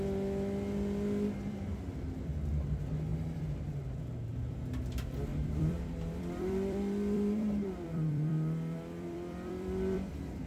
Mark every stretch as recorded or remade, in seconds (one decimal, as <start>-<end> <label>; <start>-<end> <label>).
0.0-5.3 recorded; 5.3-10.5 remade